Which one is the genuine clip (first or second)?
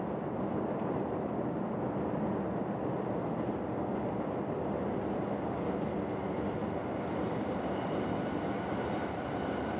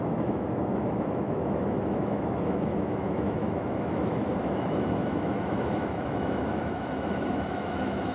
first